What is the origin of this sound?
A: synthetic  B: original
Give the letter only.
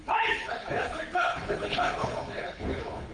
A